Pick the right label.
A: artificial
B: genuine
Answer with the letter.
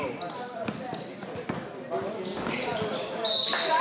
B